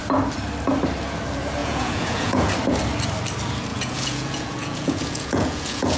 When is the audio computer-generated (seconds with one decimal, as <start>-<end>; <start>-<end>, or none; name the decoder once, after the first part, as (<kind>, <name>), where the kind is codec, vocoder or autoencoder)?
1.6-2.5 (vocoder, Vocos); 3.7-6.0